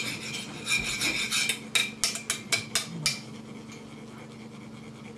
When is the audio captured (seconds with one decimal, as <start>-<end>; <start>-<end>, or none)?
0.0-5.2